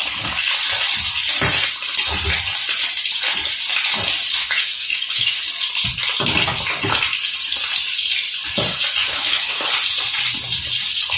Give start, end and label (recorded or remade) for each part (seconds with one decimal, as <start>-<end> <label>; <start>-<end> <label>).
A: 0.0-4.4 recorded; 4.4-5.4 remade; 5.4-9.0 recorded; 9.0-9.7 remade; 9.7-11.2 recorded